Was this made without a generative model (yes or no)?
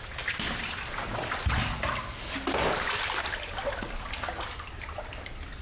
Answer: yes